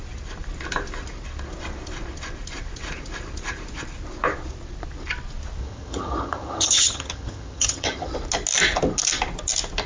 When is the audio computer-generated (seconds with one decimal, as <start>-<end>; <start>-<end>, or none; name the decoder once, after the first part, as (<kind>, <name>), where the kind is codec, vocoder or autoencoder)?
5.6-8.1 (vocoder, HiFi-GAN)